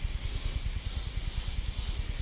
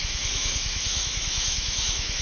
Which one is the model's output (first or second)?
second